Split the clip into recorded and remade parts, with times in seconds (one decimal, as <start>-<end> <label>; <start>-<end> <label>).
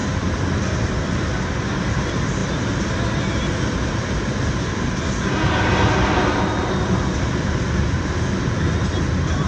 0.0-9.5 recorded